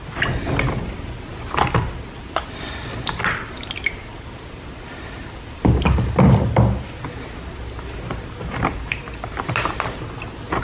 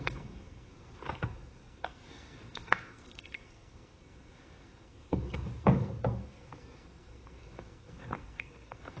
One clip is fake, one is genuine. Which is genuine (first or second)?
first